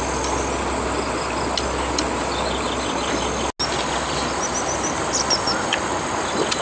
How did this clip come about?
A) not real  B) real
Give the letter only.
B